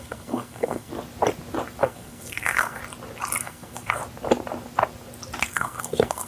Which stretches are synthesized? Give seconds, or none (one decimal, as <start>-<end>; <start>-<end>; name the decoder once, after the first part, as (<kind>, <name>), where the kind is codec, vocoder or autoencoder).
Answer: 0.0-0.9 (codec, SNAC); 1.8-2.8; 3.4-4.0; 5.4-6.3